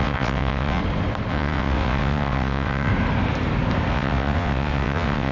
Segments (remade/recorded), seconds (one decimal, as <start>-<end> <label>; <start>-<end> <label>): 0.0-0.8 remade; 0.8-1.3 recorded; 1.3-2.9 remade; 2.9-3.9 recorded; 3.9-5.3 remade